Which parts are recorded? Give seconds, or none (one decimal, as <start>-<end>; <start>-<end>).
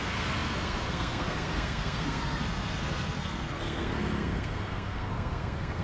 none